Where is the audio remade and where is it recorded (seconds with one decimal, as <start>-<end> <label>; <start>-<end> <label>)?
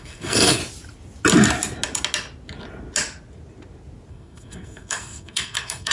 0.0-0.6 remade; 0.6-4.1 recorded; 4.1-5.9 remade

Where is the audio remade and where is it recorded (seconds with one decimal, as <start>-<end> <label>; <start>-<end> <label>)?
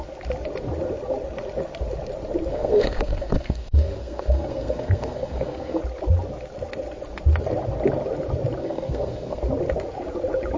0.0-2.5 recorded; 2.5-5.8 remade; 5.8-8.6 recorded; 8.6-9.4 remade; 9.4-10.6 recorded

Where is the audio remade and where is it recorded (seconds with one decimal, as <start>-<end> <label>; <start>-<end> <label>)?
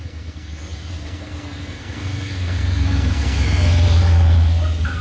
0.0-5.0 remade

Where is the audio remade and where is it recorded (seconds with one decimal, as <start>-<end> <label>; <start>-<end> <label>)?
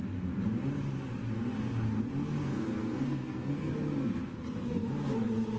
0.0-2.4 recorded; 2.4-3.7 remade; 3.7-5.6 recorded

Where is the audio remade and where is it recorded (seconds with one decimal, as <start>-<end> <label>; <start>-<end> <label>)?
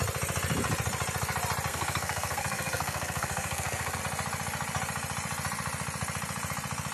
0.0-1.7 recorded; 1.7-4.0 remade; 4.0-6.9 recorded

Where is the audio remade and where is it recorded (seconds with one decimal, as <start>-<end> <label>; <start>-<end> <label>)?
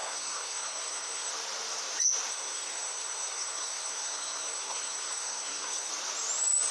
0.0-1.3 remade; 1.3-2.3 recorded; 2.3-5.9 remade; 5.9-6.7 recorded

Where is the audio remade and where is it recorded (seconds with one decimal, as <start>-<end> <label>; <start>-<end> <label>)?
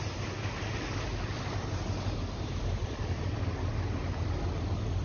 0.0-5.0 recorded